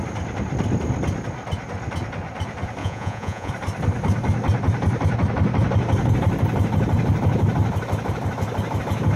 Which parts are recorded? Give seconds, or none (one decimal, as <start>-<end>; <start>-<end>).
0.0-2.8; 3.5-9.2